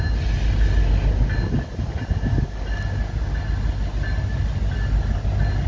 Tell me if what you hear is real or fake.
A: real